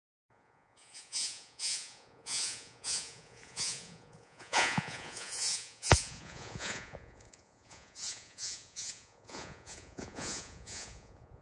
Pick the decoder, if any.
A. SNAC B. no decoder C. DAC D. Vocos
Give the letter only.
D